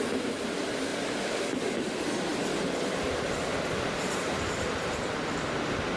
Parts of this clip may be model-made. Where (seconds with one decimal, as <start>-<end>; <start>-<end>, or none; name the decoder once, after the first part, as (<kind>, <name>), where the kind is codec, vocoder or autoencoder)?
none

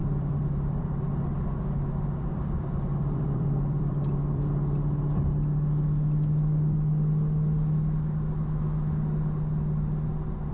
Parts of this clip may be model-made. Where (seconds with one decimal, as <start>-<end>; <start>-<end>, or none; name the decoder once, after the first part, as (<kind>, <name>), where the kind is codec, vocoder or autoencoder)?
0.0-4.4 (vocoder, BigVGAN v2)

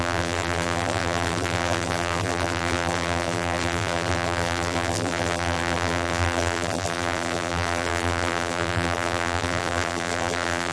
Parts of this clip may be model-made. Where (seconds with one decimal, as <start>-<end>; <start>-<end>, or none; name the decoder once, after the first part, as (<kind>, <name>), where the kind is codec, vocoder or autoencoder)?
0.0-10.7 (vocoder, BigVGAN v2)

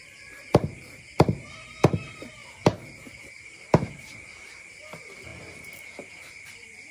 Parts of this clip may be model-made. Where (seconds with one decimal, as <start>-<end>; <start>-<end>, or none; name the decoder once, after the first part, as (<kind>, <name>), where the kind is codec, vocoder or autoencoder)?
0.0-6.9 (vocoder, BigVGAN v2)